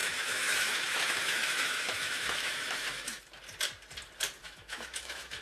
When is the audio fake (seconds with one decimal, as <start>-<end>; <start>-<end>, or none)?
0.0-3.2; 4.4-5.4